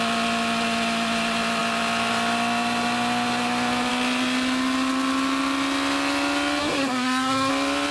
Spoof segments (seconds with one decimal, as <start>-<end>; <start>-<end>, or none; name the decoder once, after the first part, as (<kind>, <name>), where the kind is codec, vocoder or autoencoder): 6.6-7.5 (codec, SNAC)